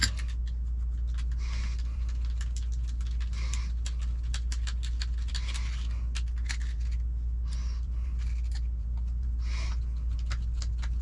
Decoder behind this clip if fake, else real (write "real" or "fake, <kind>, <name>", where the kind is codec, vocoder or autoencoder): real